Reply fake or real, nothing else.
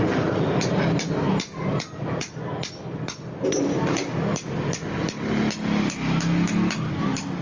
real